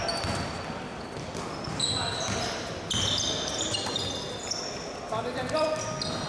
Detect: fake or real real